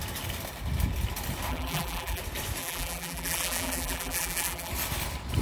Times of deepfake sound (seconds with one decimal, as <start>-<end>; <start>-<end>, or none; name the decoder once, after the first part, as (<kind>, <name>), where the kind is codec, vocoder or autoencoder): 1.5-2.2 (vocoder, BigVGAN v2); 2.6-4.7